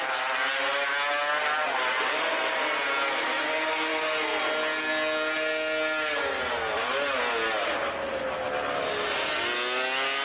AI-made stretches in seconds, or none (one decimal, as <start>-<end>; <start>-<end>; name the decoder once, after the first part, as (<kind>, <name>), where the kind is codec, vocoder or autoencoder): none